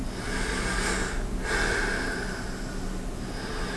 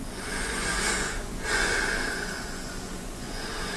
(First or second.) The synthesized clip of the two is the second